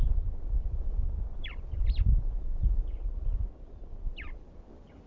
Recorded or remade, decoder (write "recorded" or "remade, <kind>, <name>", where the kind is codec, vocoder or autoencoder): recorded